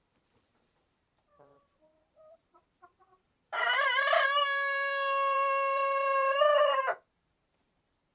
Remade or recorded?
remade